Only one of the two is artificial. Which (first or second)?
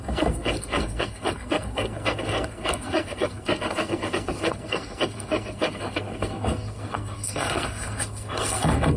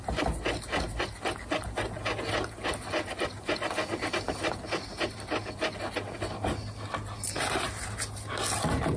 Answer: first